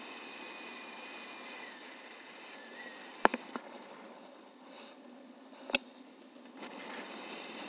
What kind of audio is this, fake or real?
real